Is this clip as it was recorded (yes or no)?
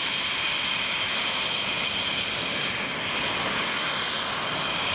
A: yes